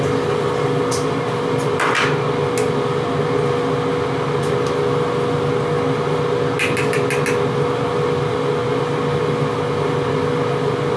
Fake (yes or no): no